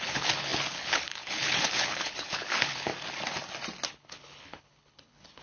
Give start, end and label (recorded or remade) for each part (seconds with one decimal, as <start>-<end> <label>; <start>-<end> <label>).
0.0-2.9 remade; 2.9-4.0 recorded; 4.0-5.4 remade